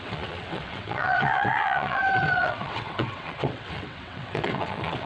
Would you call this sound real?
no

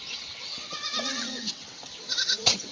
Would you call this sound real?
no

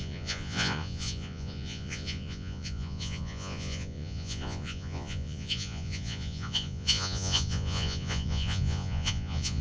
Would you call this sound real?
no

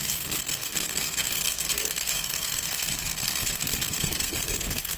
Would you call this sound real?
no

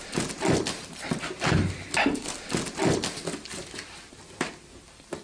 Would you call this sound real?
yes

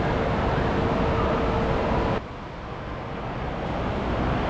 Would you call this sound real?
yes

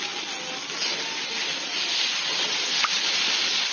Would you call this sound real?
yes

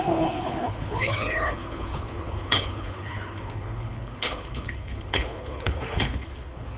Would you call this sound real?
no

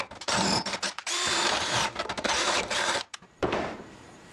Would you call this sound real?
no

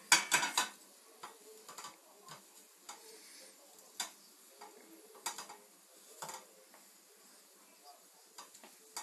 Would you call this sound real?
yes